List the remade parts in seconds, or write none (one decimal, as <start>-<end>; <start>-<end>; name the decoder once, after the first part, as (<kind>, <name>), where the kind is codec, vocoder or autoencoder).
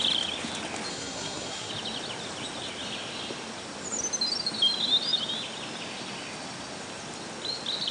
0.9-1.7 (codec, SNAC)